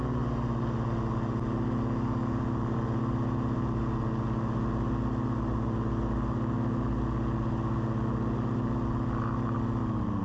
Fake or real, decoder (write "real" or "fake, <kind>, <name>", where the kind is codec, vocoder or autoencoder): real